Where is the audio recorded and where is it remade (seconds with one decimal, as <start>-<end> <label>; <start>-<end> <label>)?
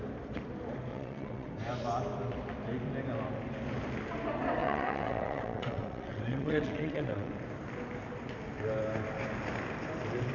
0.0-0.9 recorded; 0.9-1.5 remade; 1.5-4.6 recorded; 4.6-7.3 remade; 7.3-10.3 recorded